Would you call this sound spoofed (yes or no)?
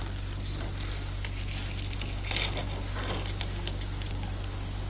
no